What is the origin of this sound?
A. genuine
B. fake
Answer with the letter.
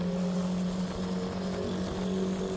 A